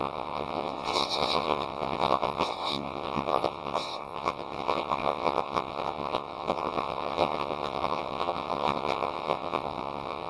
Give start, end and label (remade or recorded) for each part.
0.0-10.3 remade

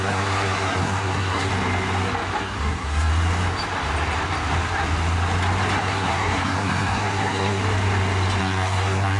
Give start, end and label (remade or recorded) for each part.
0.0-1.5 remade; 1.5-2.4 recorded; 2.4-3.1 remade; 3.1-5.8 recorded; 5.8-7.6 remade; 7.6-8.4 recorded; 8.4-9.2 remade

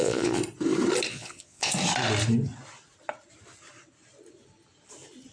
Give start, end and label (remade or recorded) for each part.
0.0-0.4 remade; 0.4-1.1 recorded; 1.1-1.7 remade; 1.7-5.3 recorded

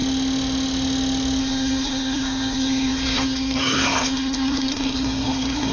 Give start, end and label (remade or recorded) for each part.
0.0-1.4 recorded; 1.4-5.7 remade

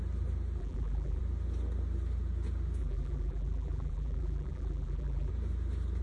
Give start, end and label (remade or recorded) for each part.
0.0-0.6 recorded; 0.6-1.2 remade; 1.2-2.8 recorded; 2.8-5.3 remade; 5.3-6.0 recorded